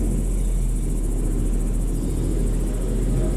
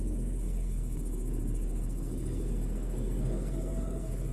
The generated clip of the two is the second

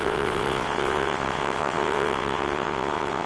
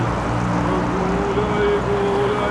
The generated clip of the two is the first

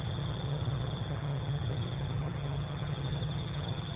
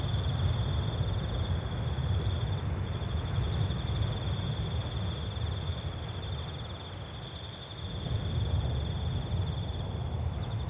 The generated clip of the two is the first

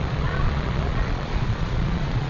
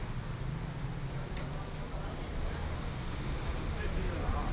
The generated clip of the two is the first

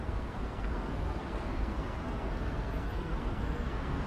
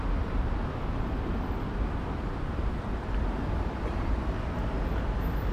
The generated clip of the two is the first